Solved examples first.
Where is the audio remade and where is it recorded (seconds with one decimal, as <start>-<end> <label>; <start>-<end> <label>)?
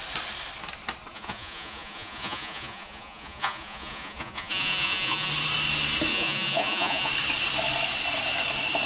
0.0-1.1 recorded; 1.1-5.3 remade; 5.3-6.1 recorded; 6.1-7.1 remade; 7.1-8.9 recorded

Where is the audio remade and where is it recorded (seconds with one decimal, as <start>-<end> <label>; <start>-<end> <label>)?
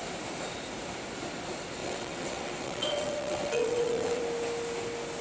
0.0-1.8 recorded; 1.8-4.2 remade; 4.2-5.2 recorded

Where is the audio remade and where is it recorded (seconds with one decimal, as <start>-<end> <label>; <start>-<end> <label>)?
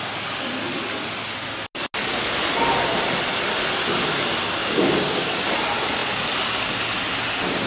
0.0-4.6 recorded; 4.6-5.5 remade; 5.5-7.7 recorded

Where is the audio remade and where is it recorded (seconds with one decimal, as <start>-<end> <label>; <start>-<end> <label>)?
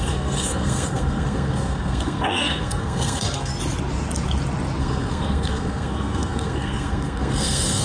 0.0-3.5 remade; 3.5-4.8 recorded; 4.8-7.8 remade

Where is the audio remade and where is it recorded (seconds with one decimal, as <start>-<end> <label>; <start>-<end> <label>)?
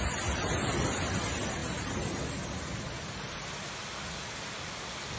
0.0-5.2 recorded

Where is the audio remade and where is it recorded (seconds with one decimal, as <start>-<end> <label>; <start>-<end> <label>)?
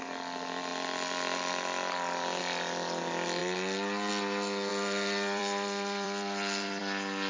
0.0-4.7 recorded; 4.7-6.8 remade; 6.8-7.3 recorded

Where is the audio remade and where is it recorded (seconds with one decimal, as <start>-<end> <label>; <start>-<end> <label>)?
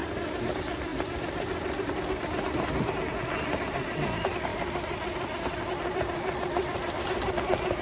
0.0-4.5 recorded; 4.5-6.9 remade; 6.9-7.8 recorded